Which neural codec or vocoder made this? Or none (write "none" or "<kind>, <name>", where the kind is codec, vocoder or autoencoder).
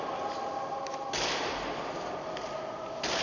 none